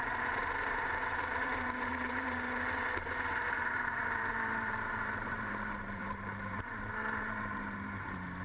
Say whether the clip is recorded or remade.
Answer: remade